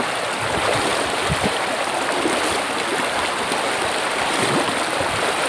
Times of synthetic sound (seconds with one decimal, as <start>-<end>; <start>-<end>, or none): none